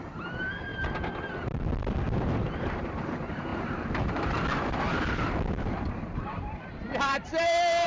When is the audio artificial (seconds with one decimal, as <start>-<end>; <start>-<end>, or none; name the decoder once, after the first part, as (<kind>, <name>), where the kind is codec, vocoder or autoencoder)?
0.0-0.7 (vocoder, BigVGAN v2); 1.8-7.9